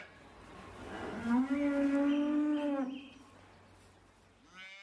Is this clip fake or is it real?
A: real